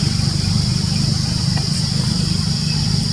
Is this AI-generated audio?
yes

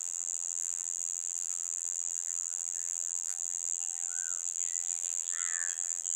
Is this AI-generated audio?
yes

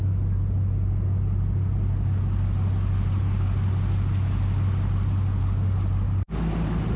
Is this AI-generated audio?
no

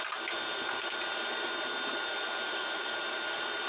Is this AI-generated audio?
yes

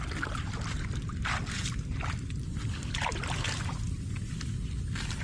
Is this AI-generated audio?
no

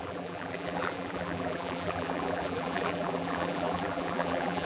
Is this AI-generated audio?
yes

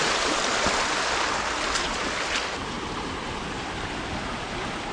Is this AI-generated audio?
yes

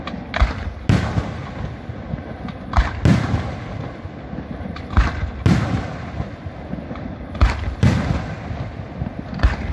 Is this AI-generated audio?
no